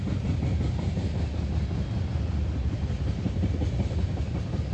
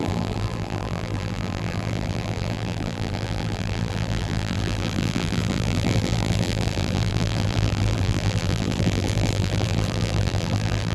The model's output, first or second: second